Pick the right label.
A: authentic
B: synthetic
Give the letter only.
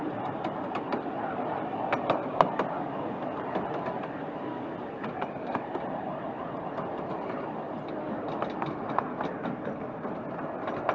A